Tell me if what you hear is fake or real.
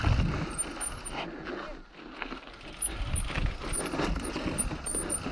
real